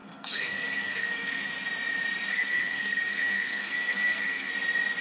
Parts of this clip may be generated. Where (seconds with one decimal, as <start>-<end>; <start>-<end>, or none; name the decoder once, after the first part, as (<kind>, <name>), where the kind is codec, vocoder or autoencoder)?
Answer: 0.0-1.5 (codec, SNAC); 2.3-4.5